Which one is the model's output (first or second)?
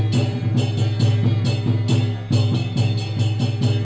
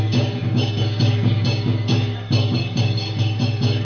second